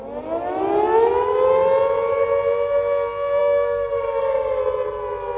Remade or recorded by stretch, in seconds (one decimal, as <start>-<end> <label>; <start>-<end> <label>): 0.0-3.4 recorded; 3.4-4.6 remade; 4.6-5.4 recorded